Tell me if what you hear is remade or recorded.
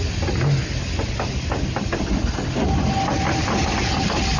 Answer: recorded